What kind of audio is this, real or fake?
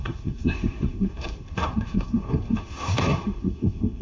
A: fake